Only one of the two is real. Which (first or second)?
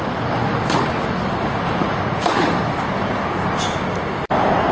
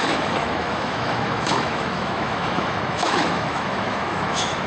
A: first